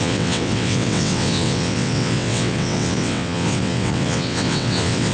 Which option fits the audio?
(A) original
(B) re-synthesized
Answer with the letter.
B